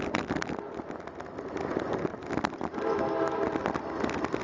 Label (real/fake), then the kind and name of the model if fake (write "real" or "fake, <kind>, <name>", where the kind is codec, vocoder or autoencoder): real